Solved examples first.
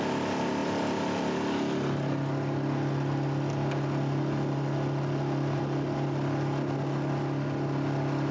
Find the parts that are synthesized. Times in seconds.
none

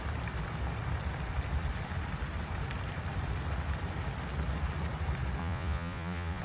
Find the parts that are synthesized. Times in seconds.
5.4-6.4 (vocoder, Vocos)

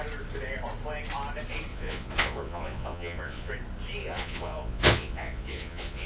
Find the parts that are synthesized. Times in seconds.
1.7-3.5 (vocoder, Vocos); 4.0-6.1

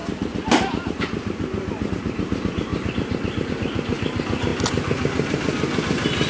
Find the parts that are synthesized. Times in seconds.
none

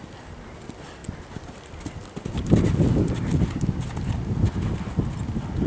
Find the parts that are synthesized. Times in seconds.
none

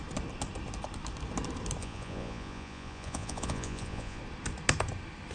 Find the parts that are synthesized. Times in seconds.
1.8-4.2 (vocoder, Vocos)

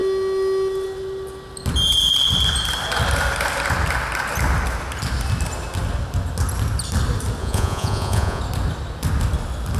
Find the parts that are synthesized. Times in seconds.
7.4-8.4 (vocoder, Vocos)

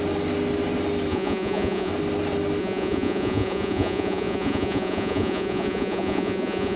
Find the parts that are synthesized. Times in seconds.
1.1-1.9 (vocoder, Vocos); 2.6-6.8